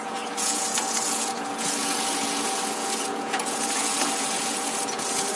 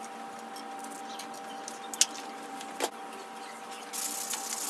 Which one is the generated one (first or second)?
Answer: first